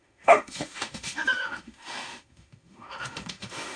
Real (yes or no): no